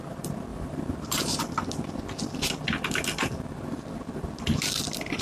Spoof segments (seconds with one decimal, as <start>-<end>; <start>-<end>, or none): 0.5-1.4; 3.2-3.7